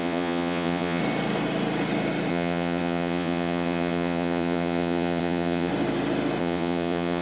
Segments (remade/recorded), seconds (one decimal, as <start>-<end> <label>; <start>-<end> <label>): 0.0-1.0 remade; 1.0-2.3 recorded; 2.3-5.7 remade; 5.7-6.4 recorded; 6.4-7.2 remade